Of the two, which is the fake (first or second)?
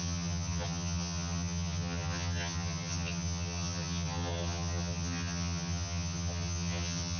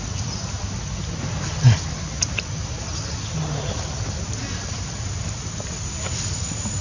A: first